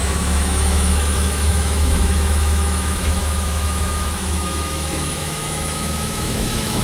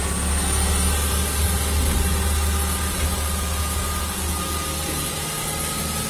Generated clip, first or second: first